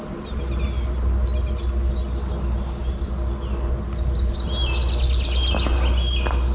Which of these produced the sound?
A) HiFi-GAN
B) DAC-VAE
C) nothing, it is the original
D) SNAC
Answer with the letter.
C